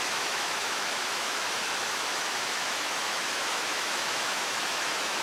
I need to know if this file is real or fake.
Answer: fake